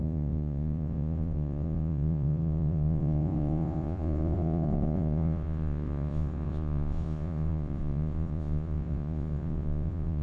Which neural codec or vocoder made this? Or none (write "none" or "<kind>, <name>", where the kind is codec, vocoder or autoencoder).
vocoder, Vocos